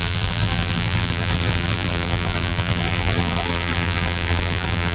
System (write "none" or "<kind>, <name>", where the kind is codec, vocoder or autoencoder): vocoder, BigVGAN v2